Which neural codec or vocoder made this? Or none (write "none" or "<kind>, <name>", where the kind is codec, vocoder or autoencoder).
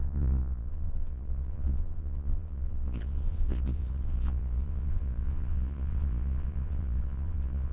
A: vocoder, Vocos